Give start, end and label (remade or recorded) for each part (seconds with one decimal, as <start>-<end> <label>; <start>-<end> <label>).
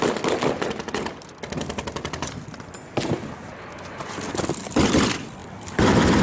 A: 0.0-6.2 recorded